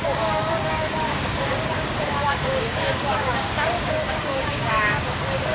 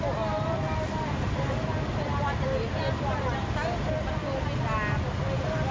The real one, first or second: second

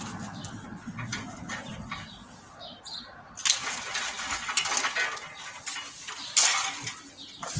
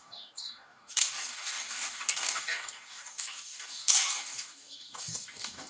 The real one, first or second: first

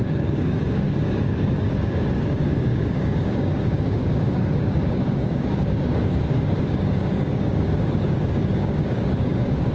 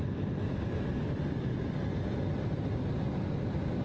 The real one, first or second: second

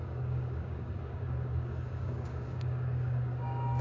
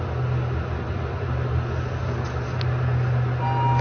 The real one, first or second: second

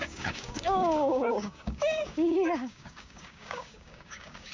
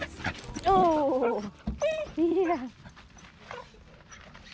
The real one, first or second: second